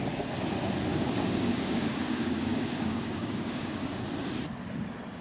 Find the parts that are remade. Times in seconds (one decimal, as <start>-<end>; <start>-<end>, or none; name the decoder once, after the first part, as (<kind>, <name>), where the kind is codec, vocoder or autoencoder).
0.9-4.0 (codec, DAC)